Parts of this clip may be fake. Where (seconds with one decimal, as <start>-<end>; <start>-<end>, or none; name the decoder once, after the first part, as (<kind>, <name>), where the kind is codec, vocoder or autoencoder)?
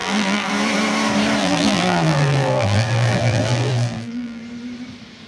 0.0-0.5 (vocoder, BigVGAN v2); 1.4-4.4